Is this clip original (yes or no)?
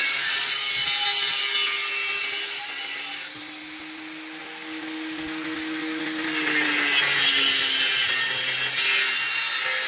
yes